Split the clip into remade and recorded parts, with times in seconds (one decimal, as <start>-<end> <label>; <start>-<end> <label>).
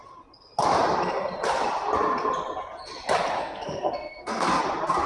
0.0-3.4 recorded; 3.4-4.6 remade; 4.6-5.1 recorded